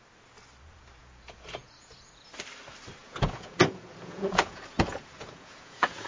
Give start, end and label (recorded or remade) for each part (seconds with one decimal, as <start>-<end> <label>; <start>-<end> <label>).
0.0-1.0 recorded; 1.0-2.3 remade; 2.3-3.0 recorded; 3.0-6.1 remade